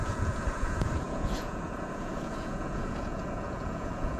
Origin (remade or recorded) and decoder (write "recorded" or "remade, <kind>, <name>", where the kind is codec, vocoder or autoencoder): remade, vocoder, Vocos